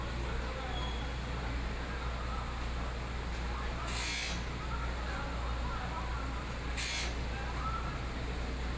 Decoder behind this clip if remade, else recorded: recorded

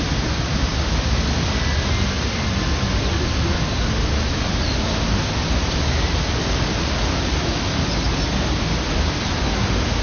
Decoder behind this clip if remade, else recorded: recorded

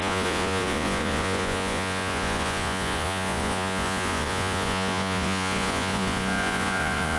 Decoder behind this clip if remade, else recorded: remade, vocoder, Vocos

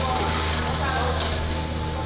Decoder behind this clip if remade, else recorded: recorded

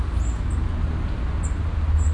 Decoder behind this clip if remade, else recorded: recorded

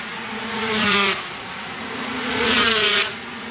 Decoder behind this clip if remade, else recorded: remade, vocoder, Vocos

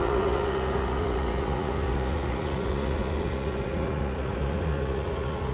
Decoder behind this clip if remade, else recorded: remade, vocoder, Vocos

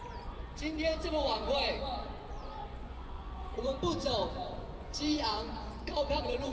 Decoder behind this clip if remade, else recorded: remade, vocoder, Vocos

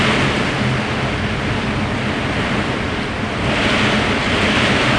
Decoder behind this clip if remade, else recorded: recorded